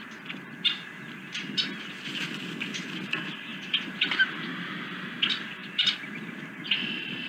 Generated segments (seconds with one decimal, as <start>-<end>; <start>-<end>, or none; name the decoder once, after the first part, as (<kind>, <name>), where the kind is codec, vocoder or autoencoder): 3.5-4.2 (vocoder, BigVGAN v2)